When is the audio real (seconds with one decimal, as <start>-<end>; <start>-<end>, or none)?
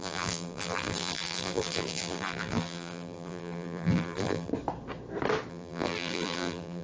4.5-5.5